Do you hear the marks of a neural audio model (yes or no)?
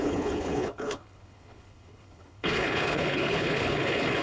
yes